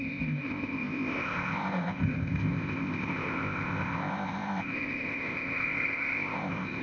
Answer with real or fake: fake